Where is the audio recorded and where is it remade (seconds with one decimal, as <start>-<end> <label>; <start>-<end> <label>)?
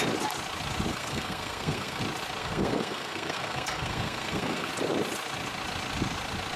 0.0-0.9 recorded; 0.9-2.0 remade; 2.0-2.4 recorded; 2.4-4.7 remade; 4.7-6.6 recorded